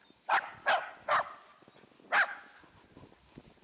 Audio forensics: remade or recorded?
recorded